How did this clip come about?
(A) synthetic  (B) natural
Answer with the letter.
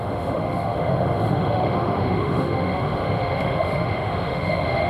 A